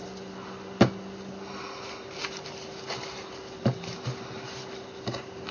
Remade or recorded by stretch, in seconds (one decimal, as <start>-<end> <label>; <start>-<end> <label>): 0.0-5.5 recorded